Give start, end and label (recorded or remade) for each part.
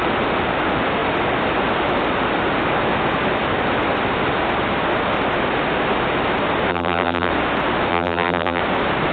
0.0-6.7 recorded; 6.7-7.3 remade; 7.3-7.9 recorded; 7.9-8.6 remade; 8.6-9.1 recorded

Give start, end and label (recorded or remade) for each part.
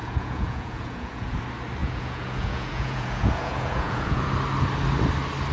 0.0-1.4 remade; 1.4-1.8 recorded; 1.8-4.3 remade; 4.3-5.5 recorded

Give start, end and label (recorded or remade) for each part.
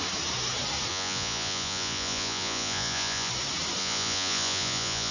0.0-0.9 recorded; 0.9-3.3 remade; 3.3-3.8 recorded; 3.8-5.1 remade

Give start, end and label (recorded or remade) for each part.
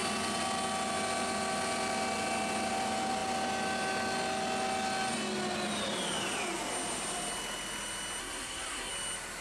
0.0-8.2 recorded; 8.2-8.9 remade; 8.9-9.4 recorded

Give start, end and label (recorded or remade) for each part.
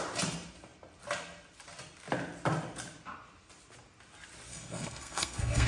0.0-4.5 recorded; 4.5-5.7 remade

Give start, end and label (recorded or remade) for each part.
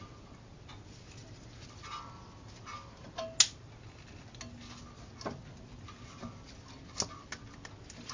0.0-8.1 recorded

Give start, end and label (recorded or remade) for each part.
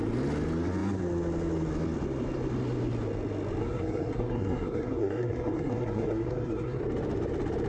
0.0-3.6 recorded; 3.6-6.8 remade; 6.8-7.7 recorded